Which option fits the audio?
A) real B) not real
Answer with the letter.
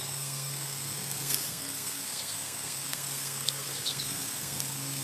B